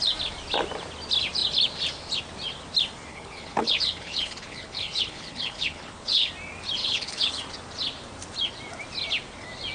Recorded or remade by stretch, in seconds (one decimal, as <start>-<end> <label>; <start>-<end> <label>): 0.0-3.1 recorded; 3.1-6.3 remade; 6.3-6.8 recorded; 6.8-7.4 remade; 7.4-9.7 recorded